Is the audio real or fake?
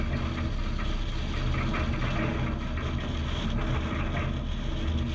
real